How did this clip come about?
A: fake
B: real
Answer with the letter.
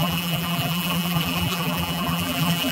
A